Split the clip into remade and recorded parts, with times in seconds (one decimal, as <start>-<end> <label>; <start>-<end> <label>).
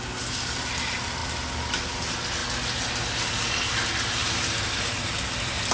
0.0-5.7 recorded